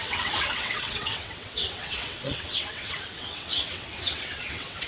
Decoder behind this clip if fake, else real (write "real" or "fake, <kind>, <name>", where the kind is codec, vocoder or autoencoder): fake, vocoder, WaveNeXt